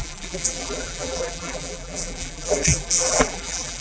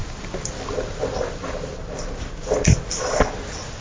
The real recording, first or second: second